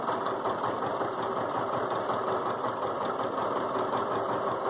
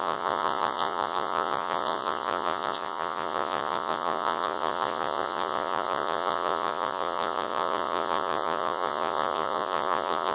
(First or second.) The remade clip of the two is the second